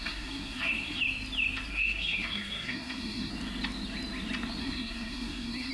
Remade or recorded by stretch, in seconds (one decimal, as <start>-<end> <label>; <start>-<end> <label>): 0.0-1.0 remade; 1.0-1.7 recorded; 1.7-3.3 remade; 3.3-4.6 recorded; 4.6-5.7 remade